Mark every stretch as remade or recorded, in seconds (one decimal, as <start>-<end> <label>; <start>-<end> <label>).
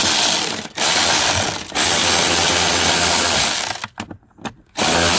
0.0-5.2 recorded